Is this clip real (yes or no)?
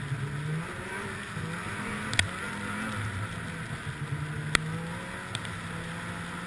yes